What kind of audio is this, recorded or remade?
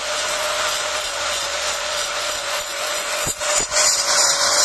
remade